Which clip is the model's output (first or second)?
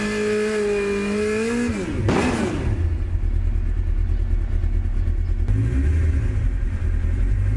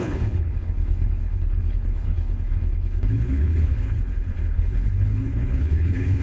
second